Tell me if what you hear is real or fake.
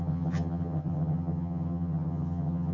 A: fake